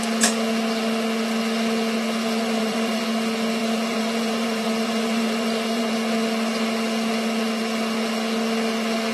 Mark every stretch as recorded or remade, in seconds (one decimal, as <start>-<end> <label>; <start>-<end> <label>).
0.0-2.2 recorded; 2.2-3.0 remade; 3.0-3.6 recorded; 3.6-5.9 remade; 5.9-9.1 recorded